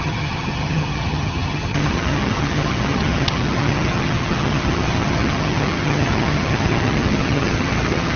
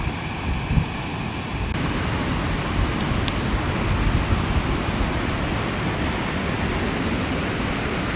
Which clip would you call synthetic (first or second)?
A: first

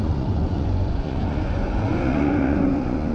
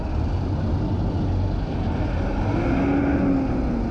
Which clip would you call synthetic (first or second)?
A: first